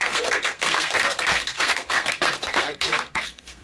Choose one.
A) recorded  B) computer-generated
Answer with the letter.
B